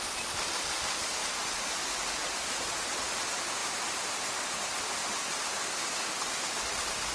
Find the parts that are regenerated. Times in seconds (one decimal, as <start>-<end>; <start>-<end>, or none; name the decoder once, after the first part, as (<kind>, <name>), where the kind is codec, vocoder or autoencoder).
none